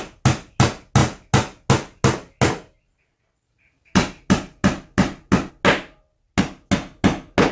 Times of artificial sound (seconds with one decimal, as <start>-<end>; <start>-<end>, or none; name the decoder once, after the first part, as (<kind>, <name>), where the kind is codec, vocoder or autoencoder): none